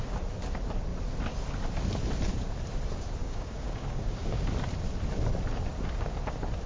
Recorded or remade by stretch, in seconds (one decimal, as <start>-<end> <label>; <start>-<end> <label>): 0.0-3.2 recorded; 3.2-4.5 remade; 4.5-6.7 recorded